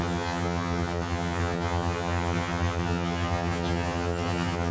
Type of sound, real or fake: fake